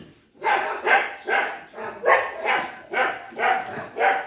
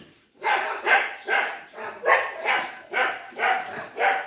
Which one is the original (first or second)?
first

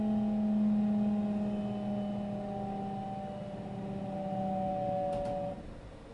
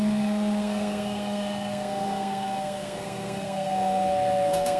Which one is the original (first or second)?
first